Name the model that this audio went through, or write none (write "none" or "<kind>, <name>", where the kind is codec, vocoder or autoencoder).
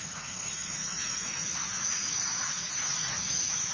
autoencoder, DAC-VAE